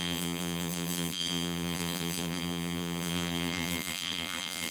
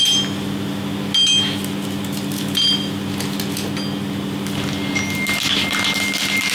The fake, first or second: first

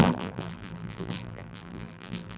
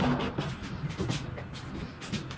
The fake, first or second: first